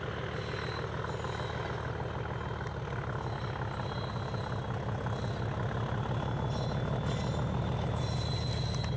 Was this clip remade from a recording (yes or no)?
no